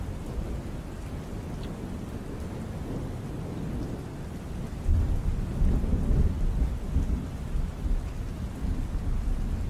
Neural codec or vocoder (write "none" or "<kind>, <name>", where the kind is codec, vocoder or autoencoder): none